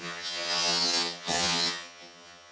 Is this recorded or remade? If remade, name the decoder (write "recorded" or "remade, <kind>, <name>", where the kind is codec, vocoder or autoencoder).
remade, vocoder, HiFi-GAN